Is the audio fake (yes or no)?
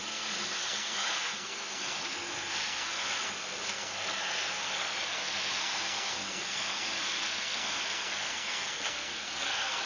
yes